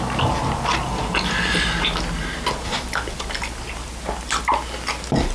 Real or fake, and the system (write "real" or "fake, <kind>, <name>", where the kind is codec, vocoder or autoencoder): real